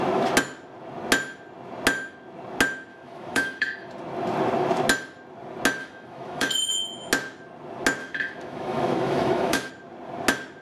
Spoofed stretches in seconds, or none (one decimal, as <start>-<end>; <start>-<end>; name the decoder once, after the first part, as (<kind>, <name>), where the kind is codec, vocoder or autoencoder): 2.9-3.9 (autoencoder, DAC-VAE); 5.8-6.5; 8.0-9.7